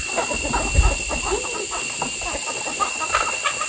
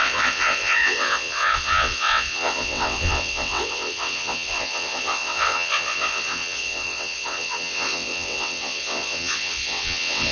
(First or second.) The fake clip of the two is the second